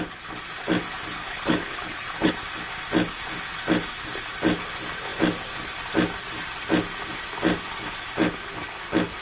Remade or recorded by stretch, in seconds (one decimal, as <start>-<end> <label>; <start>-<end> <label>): 0.0-1.2 recorded; 1.2-2.3 remade; 2.3-9.2 recorded